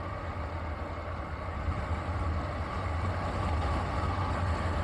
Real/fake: real